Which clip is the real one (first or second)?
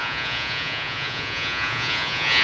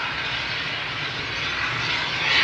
second